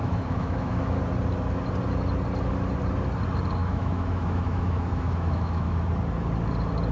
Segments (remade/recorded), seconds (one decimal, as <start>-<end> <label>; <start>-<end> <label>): 0.0-1.0 remade; 1.0-3.6 recorded; 3.6-5.8 remade; 5.8-6.9 recorded